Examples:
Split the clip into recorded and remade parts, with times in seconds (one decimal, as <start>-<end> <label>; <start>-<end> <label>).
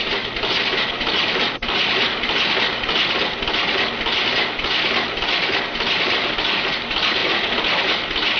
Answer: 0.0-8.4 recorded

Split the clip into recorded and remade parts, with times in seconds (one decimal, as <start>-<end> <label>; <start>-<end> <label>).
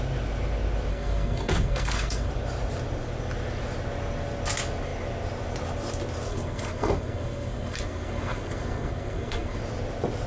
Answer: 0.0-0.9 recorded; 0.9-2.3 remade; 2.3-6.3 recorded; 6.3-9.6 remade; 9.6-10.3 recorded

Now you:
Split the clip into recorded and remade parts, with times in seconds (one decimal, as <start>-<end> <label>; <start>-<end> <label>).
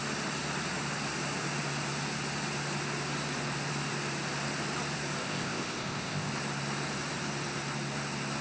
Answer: 0.0-5.2 recorded; 5.2-6.3 remade; 6.3-8.4 recorded